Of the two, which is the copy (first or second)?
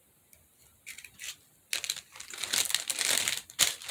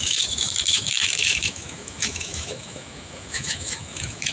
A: second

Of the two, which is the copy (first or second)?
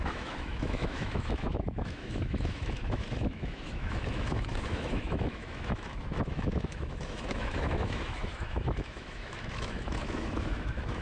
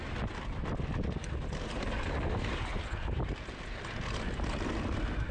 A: first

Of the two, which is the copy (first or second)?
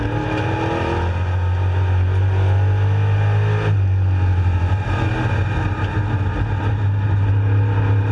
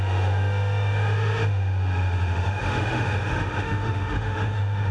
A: second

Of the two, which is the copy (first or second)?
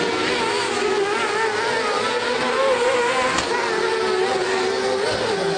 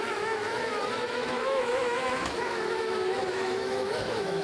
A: second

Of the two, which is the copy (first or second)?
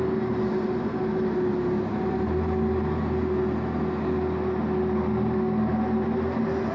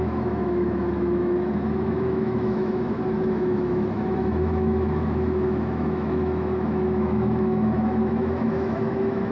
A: second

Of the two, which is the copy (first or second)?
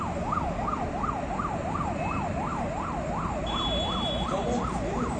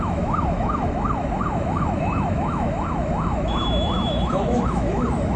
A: second